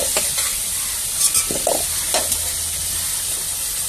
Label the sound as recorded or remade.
recorded